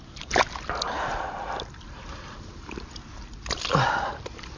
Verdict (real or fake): real